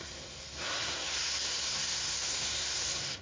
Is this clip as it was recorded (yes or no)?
no